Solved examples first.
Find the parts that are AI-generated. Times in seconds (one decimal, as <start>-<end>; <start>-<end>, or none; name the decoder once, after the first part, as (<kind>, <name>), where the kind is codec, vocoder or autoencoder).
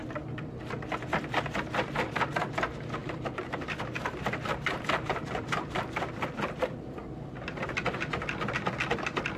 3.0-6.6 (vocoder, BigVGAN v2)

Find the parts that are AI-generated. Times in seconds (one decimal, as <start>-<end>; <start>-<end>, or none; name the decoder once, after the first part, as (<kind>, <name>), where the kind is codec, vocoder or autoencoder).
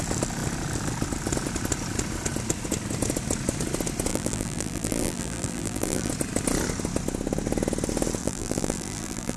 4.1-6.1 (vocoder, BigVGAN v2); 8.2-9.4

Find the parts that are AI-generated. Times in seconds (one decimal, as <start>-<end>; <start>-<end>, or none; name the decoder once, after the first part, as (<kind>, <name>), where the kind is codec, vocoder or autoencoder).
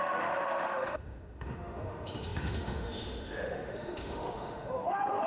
0.0-5.3 (autoencoder, DAC-VAE)